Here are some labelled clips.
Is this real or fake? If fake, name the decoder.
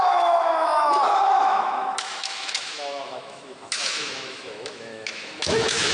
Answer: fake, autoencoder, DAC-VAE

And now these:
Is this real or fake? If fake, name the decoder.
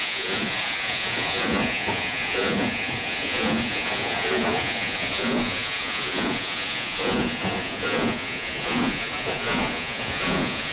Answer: fake, vocoder, Vocos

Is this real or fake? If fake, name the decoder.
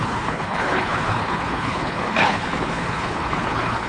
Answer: fake, codec, HILCodec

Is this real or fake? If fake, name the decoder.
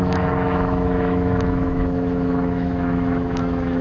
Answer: fake, autoencoder, DAC-VAE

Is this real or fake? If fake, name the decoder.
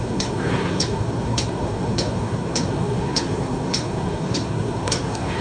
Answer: fake, codec, SNAC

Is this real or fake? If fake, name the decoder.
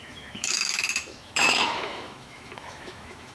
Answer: fake, autoencoder, DAC-VAE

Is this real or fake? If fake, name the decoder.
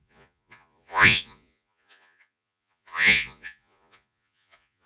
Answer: fake, vocoder, Vocos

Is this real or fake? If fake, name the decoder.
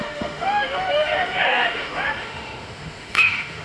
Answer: fake, autoencoder, DAC-VAE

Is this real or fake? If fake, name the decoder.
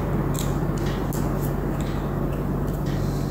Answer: real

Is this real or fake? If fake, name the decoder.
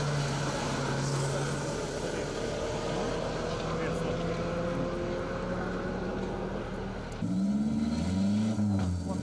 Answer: real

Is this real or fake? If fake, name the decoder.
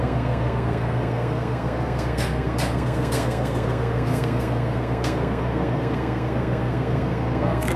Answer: fake, codec, SNAC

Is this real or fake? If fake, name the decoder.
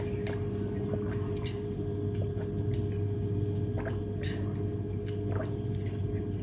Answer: real